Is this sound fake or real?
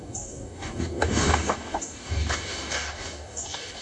fake